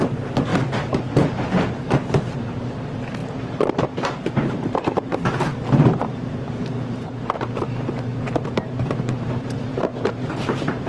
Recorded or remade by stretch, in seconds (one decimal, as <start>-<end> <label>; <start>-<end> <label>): 0.0-0.5 remade; 0.5-1.1 recorded; 1.1-10.9 remade